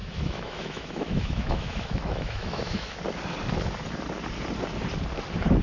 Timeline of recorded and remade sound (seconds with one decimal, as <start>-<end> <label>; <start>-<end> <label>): 0.0-3.0 remade; 3.0-5.6 recorded